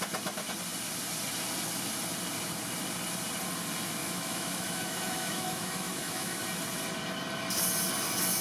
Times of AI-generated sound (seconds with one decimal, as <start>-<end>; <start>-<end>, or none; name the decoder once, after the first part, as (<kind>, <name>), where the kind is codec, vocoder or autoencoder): 4.0-6.4 (autoencoder, DAC-VAE)